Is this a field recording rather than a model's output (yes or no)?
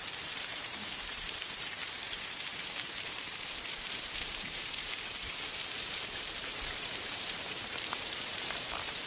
no